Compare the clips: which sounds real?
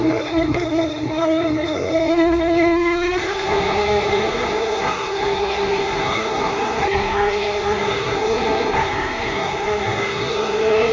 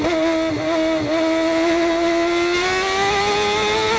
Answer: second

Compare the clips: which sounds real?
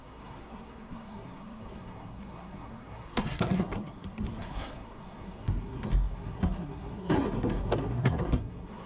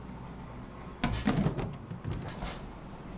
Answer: second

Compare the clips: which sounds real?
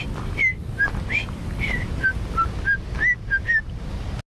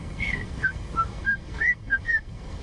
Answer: first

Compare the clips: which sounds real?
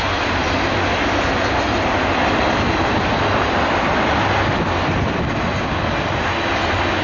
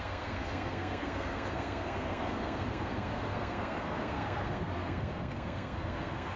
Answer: first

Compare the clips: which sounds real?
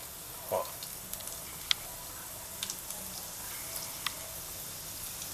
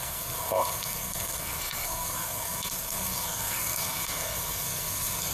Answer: first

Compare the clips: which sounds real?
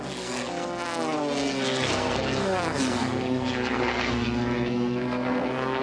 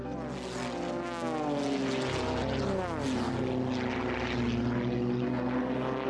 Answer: second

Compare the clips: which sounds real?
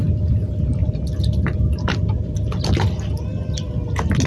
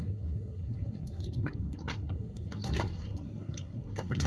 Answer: first